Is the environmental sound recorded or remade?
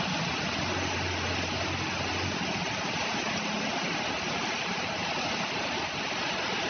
recorded